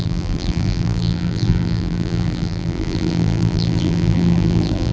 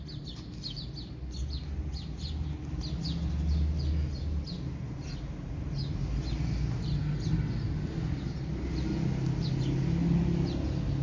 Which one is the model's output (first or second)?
first